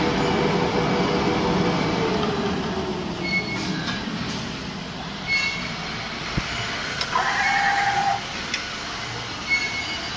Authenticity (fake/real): real